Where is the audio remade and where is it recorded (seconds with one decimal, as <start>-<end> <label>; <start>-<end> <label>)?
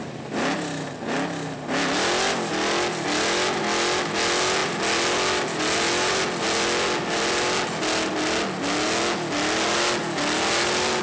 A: 0.0-11.0 recorded